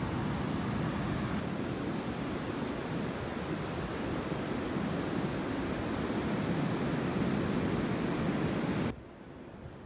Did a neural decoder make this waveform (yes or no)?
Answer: no